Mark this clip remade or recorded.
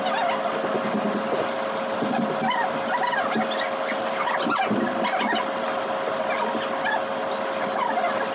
recorded